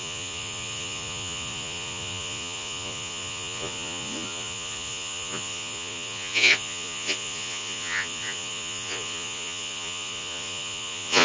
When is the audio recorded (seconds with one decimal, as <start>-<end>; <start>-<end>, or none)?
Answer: none